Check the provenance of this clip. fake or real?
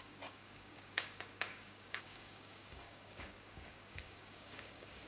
fake